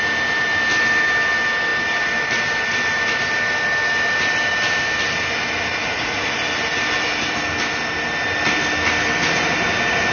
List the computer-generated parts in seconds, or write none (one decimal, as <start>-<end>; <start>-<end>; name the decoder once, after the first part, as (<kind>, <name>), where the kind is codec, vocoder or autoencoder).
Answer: 5.8-6.3 (vocoder, Vocos)